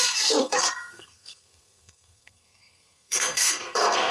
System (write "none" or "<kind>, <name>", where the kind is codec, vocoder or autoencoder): codec, SNAC